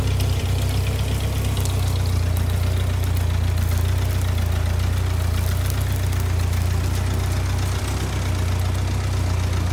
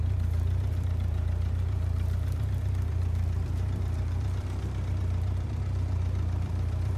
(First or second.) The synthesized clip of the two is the second